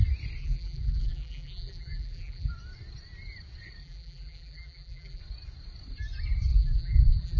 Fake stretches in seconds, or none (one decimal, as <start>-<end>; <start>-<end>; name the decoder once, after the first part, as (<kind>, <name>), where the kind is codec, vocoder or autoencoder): 0.4-2.5 (vocoder, BigVGAN v2); 3.8-5.2; 6.5-7.4